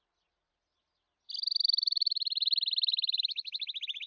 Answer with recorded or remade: recorded